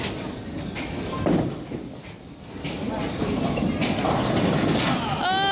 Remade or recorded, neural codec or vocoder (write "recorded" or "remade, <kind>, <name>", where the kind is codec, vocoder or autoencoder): recorded